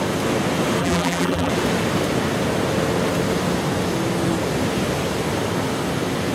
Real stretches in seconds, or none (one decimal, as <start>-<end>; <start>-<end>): 0.0-0.8; 1.5-6.3

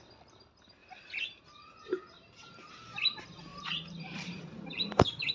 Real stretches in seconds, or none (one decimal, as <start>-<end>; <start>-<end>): 0.0-0.8; 2.7-3.5

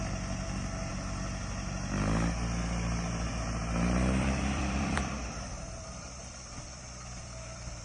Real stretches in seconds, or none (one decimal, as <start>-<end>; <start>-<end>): 0.9-3.3

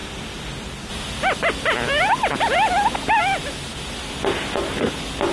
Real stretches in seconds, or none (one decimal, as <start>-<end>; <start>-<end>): 0.0-5.3

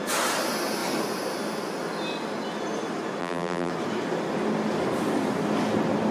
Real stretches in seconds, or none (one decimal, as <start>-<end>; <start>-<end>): 0.0-3.2; 3.7-6.1